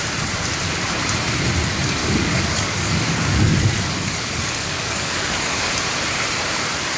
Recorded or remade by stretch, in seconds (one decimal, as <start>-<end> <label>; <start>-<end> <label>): 0.0-2.0 recorded; 2.0-5.7 remade; 5.7-7.0 recorded

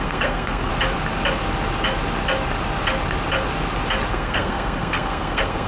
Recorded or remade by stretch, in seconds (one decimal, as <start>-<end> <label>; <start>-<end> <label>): 0.0-0.7 remade; 0.7-4.1 recorded; 4.1-5.7 remade

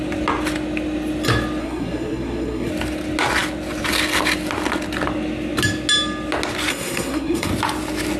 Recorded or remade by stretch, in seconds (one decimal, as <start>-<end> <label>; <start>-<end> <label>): 0.0-1.6 recorded; 1.6-2.7 remade; 2.7-6.7 recorded; 6.7-7.5 remade; 7.5-8.2 recorded

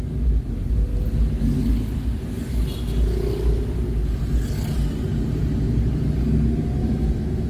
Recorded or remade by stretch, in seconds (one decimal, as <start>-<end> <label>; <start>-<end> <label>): 0.0-6.8 recorded; 6.8-7.5 remade

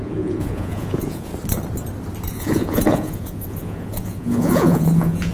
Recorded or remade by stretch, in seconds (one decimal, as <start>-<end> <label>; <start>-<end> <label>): 0.0-1.3 remade; 1.3-2.3 recorded; 2.3-5.3 remade

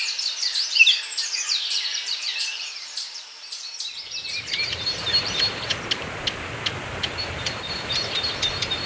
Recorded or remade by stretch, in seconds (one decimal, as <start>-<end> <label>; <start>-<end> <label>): 0.0-5.7 remade; 5.7-7.1 recorded; 7.1-8.9 remade

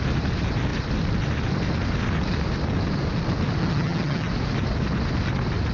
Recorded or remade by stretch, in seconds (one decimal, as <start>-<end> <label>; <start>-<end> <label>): 0.0-3.6 recorded; 3.6-4.3 remade; 4.3-5.7 recorded

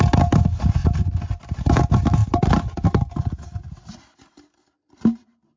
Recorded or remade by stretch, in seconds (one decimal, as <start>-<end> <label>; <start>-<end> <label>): 0.0-5.6 recorded